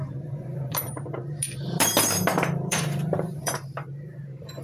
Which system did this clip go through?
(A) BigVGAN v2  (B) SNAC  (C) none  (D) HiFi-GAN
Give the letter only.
A